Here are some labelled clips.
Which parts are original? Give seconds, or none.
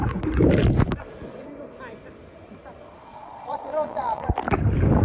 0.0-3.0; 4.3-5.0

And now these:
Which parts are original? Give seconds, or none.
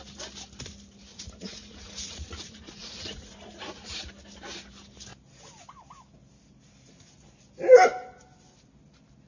0.0-1.1; 4.0-9.3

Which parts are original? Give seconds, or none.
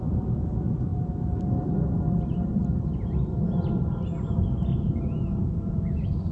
0.9-4.7